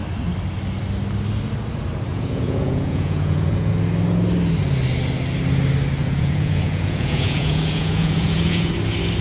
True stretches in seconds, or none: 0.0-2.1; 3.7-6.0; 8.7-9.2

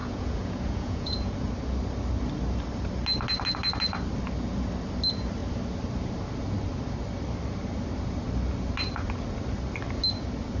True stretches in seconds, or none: 1.3-10.6

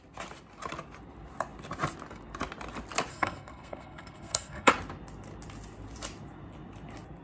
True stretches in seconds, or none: 0.0-3.1; 4.7-7.2

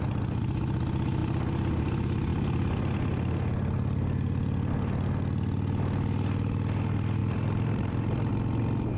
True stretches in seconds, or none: 0.0-1.2; 1.8-7.2; 8.3-9.0

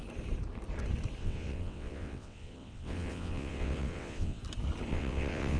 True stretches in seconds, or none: 0.0-1.2; 4.4-4.9